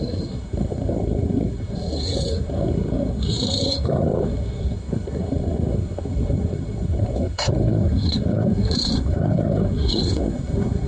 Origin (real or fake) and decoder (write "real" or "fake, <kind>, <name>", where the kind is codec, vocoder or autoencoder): fake, codec, SNAC